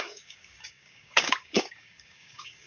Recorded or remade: remade